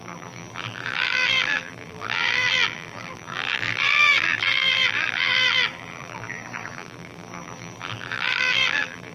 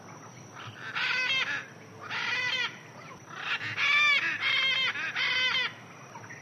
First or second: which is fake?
first